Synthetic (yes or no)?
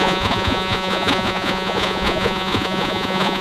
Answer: yes